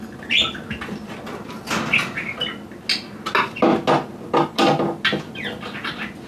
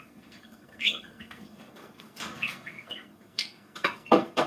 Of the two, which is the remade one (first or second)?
second